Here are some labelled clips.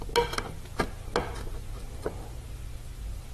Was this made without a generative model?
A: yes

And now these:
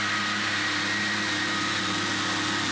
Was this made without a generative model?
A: yes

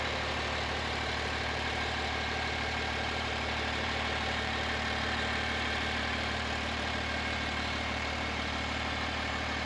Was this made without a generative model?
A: no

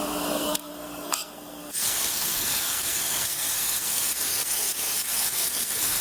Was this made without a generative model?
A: no